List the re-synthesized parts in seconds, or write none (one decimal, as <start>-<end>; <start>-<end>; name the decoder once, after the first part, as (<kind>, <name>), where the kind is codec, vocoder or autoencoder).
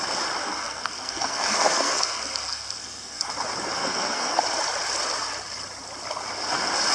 0.4-3.3 (codec, SNAC); 3.8-4.4